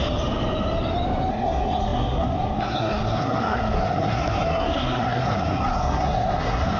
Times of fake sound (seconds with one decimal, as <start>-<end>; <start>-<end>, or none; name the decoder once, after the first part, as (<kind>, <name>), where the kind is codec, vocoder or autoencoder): 1.3-6.8 (codec, SNAC)